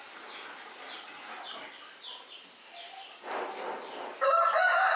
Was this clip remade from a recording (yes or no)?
no